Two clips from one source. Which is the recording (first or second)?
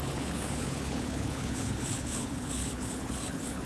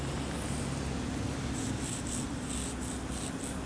second